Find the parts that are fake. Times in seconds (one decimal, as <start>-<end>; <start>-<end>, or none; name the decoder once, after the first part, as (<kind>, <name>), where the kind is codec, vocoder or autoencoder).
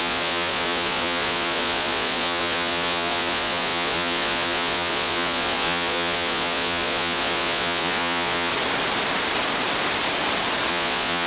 0.0-8.5 (vocoder, Vocos); 10.7-11.3